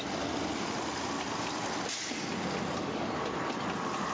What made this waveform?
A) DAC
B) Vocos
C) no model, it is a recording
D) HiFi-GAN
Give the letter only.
C